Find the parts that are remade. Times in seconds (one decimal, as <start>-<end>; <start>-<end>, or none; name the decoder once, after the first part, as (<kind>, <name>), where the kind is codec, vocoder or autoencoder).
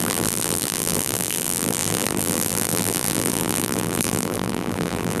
0.0-5.2 (vocoder, BigVGAN v2)